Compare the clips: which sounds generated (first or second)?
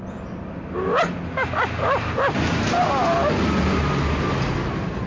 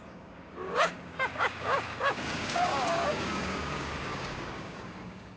second